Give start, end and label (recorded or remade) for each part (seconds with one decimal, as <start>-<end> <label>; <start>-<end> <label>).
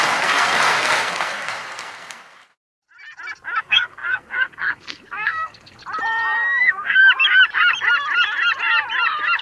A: 0.0-2.5 remade; 2.5-3.6 recorded; 3.6-5.8 remade; 5.8-6.6 recorded; 6.6-7.0 remade; 7.0-9.4 recorded